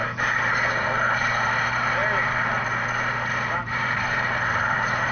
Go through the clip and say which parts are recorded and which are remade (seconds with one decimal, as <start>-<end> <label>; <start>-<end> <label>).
0.0-0.8 recorded; 0.8-2.0 remade; 2.0-3.5 recorded; 3.5-5.1 remade

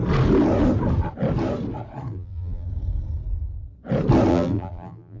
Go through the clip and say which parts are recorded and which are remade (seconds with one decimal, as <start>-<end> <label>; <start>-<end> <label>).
0.0-2.1 recorded; 2.1-2.7 remade; 2.7-4.3 recorded; 4.3-5.2 remade

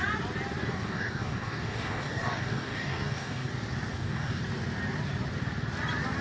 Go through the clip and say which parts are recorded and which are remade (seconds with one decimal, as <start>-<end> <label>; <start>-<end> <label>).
0.0-0.6 recorded; 0.6-3.5 remade; 3.5-3.9 recorded; 3.9-4.4 remade; 4.4-6.2 recorded